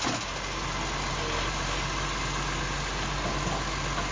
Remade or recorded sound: recorded